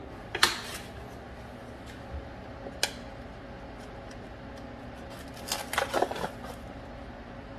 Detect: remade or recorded recorded